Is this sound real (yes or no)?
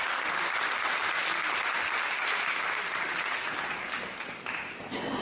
yes